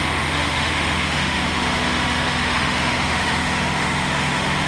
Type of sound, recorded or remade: remade